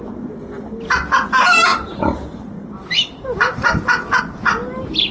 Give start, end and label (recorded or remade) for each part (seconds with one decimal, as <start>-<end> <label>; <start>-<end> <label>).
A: 0.0-1.7 recorded; 1.7-4.2 remade; 4.2-5.1 recorded